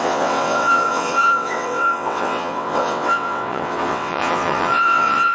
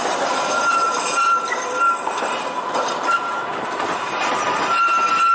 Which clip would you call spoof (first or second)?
first